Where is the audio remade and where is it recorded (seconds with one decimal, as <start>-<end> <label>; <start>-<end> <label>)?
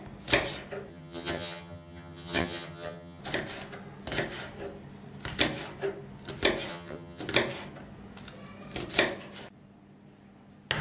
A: 0.0-0.9 recorded; 0.9-3.2 remade; 3.2-6.7 recorded; 6.7-7.2 remade; 7.2-10.8 recorded